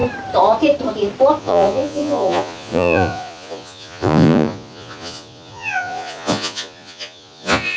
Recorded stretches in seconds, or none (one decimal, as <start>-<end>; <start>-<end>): 0.0-1.4